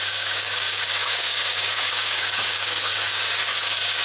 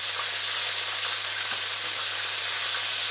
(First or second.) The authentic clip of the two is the second